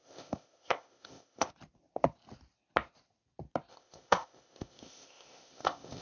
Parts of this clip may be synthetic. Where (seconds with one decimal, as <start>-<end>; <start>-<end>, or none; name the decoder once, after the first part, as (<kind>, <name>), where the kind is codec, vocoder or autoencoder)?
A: 0.0-1.5 (codec, ZipCodec); 3.7-6.0